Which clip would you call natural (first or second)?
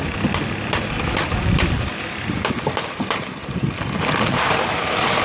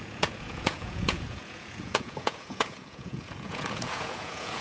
first